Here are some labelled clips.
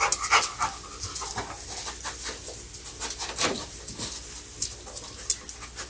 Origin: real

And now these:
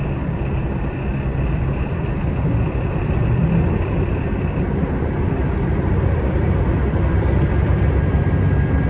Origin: fake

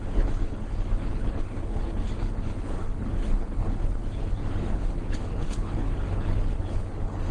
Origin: fake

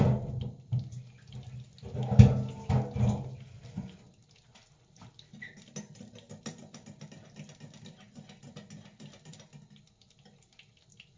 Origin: real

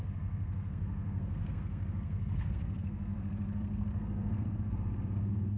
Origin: fake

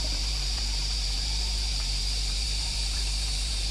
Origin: fake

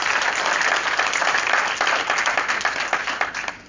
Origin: real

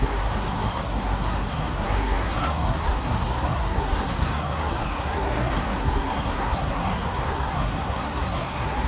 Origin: fake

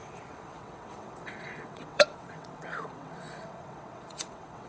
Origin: fake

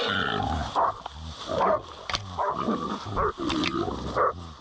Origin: real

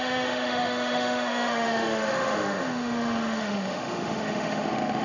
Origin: fake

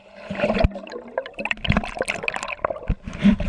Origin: real